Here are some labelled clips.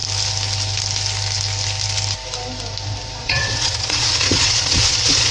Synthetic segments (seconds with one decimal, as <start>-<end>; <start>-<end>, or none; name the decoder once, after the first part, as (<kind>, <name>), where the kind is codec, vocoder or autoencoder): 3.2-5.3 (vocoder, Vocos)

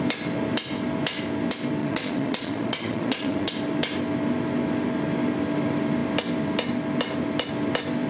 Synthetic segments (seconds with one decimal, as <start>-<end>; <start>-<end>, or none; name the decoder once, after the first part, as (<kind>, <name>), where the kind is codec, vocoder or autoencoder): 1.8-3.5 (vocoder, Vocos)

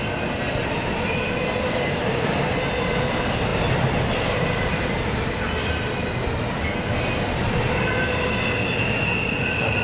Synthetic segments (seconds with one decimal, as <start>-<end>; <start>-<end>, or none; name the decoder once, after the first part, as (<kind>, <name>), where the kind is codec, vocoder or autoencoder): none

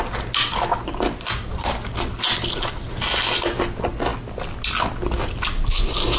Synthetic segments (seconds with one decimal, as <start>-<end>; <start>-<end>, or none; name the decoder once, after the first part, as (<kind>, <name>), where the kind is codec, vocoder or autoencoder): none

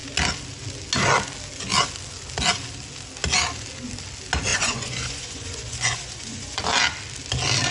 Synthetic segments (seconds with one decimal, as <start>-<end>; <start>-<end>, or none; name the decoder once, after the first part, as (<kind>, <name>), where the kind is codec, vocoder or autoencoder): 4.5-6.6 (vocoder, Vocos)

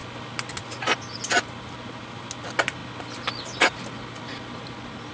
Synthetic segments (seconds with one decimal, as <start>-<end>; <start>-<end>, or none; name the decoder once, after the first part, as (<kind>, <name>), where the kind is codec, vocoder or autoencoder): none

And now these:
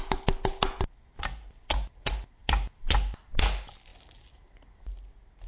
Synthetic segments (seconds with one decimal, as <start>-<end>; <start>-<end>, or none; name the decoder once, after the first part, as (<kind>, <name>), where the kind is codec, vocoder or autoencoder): none

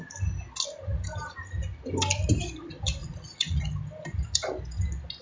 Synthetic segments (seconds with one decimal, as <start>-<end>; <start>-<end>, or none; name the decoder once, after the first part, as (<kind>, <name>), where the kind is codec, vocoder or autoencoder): 3.0-3.6 (vocoder, Vocos)